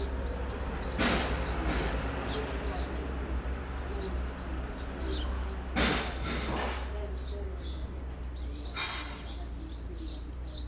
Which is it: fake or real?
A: real